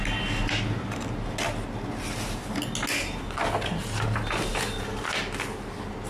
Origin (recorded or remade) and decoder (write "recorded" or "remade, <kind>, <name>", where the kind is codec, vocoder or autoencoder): recorded